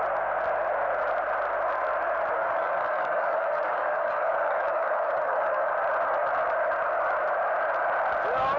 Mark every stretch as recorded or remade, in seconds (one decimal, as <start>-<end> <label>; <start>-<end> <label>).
0.0-2.4 recorded; 2.4-5.7 remade; 5.7-8.6 recorded